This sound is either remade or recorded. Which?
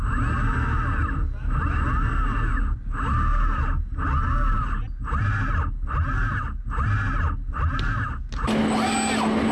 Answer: recorded